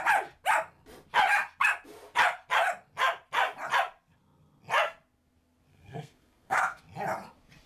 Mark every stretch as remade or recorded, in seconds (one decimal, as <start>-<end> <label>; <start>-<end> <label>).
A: 0.0-5.7 recorded; 5.7-6.8 remade; 6.8-7.7 recorded